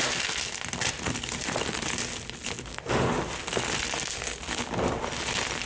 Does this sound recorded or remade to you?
recorded